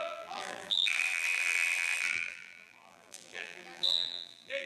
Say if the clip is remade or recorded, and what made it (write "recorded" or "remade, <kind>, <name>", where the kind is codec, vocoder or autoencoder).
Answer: remade, vocoder, BigVGAN v2